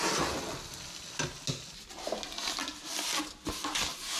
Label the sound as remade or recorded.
recorded